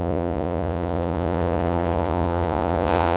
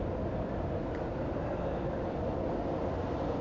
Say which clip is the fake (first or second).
first